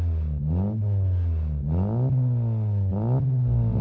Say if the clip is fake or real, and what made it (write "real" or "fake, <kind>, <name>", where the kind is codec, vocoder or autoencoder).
real